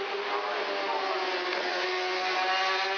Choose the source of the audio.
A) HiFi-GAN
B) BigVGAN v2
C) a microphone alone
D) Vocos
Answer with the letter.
C